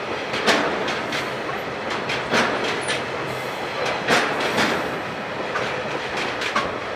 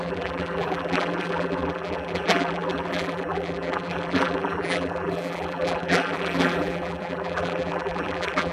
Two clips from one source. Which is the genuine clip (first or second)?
first